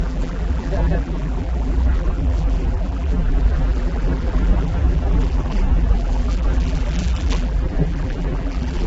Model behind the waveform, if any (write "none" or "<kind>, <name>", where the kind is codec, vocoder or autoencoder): vocoder, BigVGAN v2